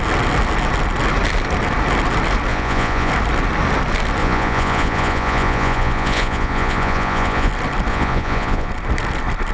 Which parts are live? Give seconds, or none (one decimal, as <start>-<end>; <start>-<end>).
0.0-2.5; 3.1-4.2; 7.5-7.9; 8.7-9.5